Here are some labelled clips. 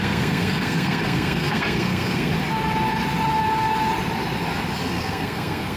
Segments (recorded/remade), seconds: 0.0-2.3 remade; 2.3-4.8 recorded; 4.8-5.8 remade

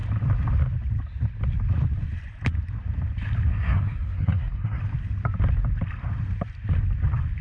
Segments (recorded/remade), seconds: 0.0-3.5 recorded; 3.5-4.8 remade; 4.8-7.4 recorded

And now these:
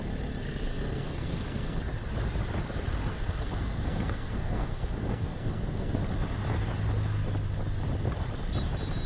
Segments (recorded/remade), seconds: 0.0-0.7 recorded; 0.7-1.8 remade; 1.8-3.1 recorded; 3.1-6.0 remade; 6.0-9.1 recorded

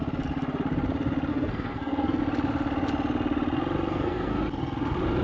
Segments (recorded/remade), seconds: 0.0-1.3 recorded; 1.3-2.2 remade; 2.2-3.9 recorded; 3.9-4.4 remade; 4.4-5.2 recorded

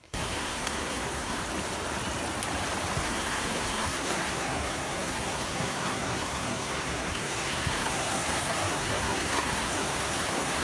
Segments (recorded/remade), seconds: 0.0-1.4 remade; 1.4-3.0 recorded; 3.0-10.6 remade

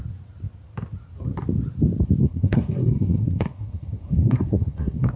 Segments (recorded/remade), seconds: 0.0-2.2 recorded; 2.2-5.2 remade